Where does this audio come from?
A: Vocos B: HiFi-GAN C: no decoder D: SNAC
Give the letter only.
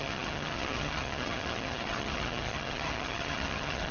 B